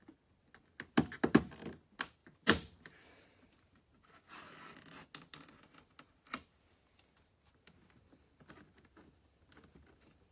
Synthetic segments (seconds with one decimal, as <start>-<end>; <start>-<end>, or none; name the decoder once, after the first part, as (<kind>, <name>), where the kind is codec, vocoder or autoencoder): 2.2-4.1 (vocoder, BigVGAN v2)